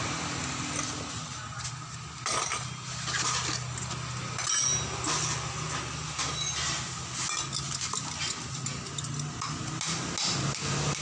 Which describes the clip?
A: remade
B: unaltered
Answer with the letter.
B